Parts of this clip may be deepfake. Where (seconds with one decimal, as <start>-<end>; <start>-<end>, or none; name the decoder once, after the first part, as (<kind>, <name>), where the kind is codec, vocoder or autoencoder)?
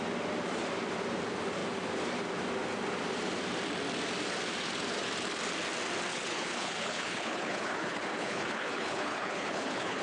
6.1-10.0 (codec, HILCodec)